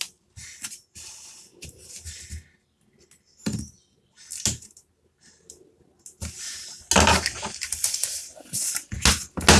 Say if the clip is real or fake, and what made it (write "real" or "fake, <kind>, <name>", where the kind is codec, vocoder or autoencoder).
real